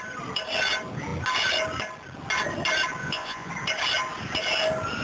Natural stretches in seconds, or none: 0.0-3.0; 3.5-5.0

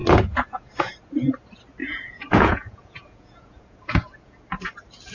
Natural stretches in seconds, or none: 0.9-1.8; 4.4-5.1